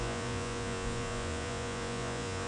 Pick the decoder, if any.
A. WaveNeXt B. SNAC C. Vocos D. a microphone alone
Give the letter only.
C